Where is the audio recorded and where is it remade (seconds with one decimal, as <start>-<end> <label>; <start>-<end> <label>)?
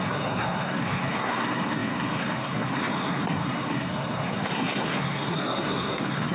0.0-6.3 remade